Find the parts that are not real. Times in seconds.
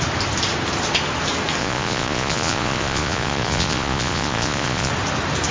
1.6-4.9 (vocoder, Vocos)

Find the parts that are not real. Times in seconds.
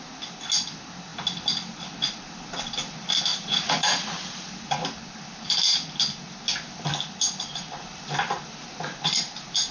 3.3-4.6 (vocoder, Vocos)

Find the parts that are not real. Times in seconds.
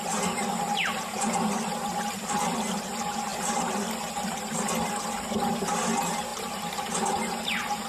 6.3-7.2 (vocoder, BigVGAN v2)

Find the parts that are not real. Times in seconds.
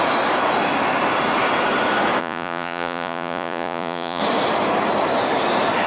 2.2-4.2 (vocoder, Vocos)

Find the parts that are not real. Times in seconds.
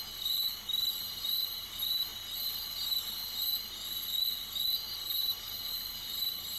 0.0-0.5 (vocoder, BigVGAN v2); 1.0-2.1; 5.1-6.6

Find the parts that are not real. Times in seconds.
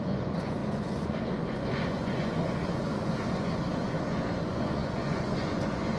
0.0-6.0 (vocoder, Vocos)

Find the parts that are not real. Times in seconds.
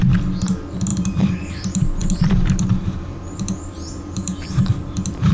0.9-1.5 (vocoder, BigVGAN v2); 2.0-5.3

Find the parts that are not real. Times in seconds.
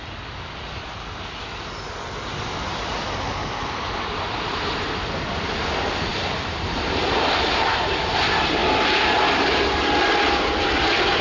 6.1-7.8 (vocoder, BigVGAN v2)